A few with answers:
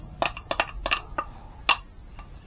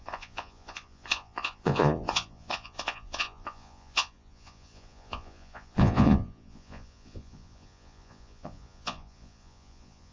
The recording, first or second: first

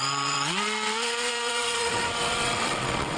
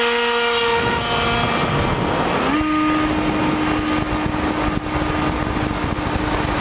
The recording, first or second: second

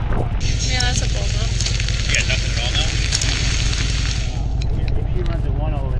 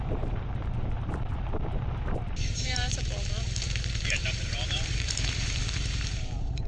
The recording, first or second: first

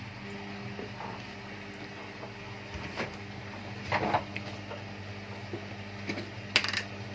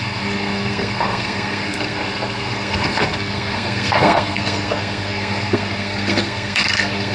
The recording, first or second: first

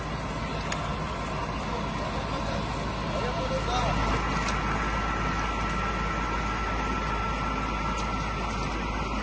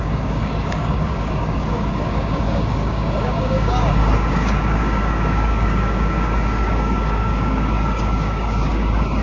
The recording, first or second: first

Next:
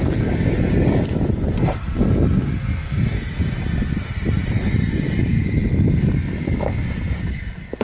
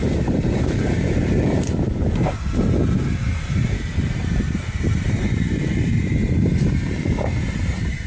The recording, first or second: first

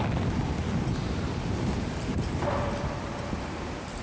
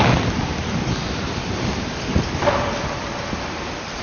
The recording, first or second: first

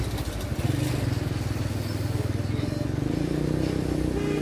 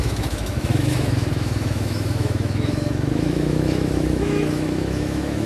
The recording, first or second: first